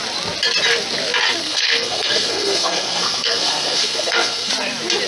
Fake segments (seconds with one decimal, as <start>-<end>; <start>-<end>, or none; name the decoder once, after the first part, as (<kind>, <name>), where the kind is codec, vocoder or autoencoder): 1.4-4.5 (codec, SNAC)